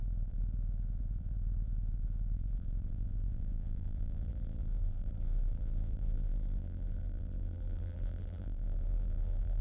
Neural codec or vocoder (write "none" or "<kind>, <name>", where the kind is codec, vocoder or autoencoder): vocoder, BigVGAN v2